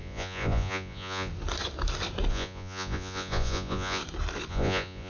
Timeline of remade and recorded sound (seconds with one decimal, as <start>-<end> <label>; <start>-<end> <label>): 0.0-1.3 remade; 1.3-2.3 recorded; 2.3-4.0 remade; 4.0-4.5 recorded; 4.5-5.1 remade